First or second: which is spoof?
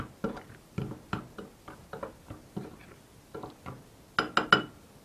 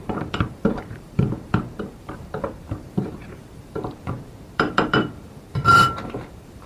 second